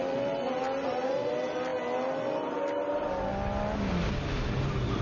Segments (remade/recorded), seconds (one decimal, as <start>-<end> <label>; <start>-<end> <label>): 0.0-5.0 recorded

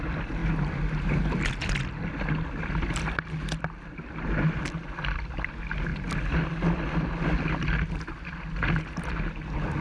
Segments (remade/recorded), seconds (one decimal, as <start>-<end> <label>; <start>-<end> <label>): 0.0-9.8 recorded

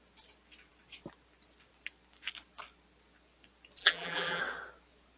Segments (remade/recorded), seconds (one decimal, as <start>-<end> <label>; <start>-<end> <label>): 0.0-3.8 recorded; 3.8-4.4 remade; 4.4-5.2 recorded

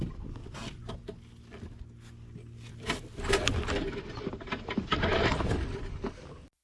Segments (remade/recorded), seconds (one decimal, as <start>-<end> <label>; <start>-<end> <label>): 0.0-0.4 recorded; 0.4-0.9 remade; 0.9-2.7 recorded; 2.7-3.3 remade; 3.3-6.6 recorded

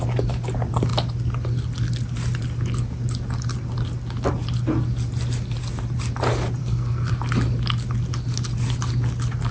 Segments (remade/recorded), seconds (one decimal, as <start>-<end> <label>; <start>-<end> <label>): 0.0-6.6 recorded; 6.6-7.1 remade; 7.1-9.5 recorded